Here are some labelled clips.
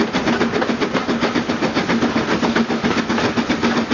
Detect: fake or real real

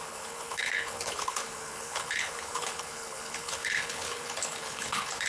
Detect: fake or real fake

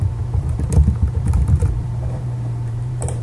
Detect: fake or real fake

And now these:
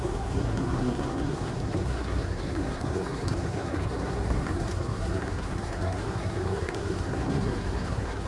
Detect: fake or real fake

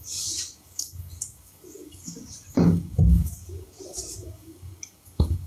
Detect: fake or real fake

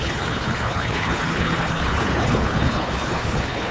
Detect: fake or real fake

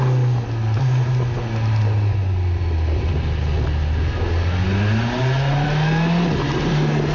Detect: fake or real real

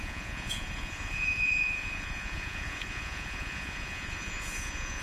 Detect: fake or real fake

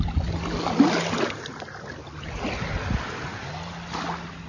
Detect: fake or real real